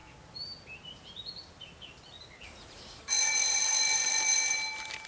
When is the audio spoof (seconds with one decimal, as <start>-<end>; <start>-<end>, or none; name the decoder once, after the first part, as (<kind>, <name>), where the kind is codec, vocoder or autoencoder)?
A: none

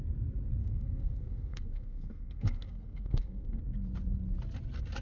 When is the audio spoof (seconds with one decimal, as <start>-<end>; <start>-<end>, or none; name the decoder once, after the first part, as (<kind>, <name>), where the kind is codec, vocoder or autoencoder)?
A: 0.6-3.6 (codec, SNAC)

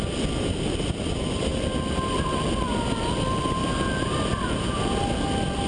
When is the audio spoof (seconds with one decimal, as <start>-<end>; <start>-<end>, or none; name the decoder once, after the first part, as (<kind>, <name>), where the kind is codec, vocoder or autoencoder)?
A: none

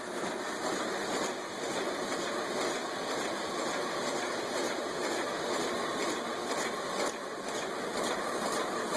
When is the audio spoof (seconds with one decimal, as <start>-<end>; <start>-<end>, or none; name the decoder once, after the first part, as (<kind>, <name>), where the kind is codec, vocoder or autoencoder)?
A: 0.0-2.8 (vocoder, BigVGAN v2); 4.7-9.0

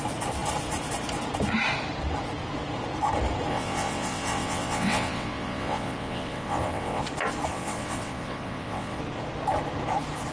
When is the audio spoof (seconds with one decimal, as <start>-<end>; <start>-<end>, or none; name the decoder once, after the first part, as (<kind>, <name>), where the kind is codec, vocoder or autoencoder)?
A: 3.5-7.0 (vocoder, WaveNeXt); 7.5-9.0

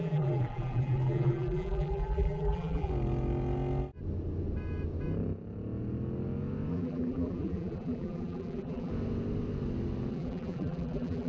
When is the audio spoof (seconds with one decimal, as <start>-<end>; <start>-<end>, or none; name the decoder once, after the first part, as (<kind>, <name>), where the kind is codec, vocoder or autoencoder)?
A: 0.0-2.9 (vocoder, BigVGAN v2); 6.7-8.9; 10.1-11.3

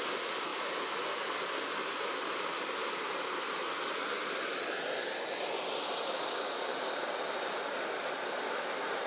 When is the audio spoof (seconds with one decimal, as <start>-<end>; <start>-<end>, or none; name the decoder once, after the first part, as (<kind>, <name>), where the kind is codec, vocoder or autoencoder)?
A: none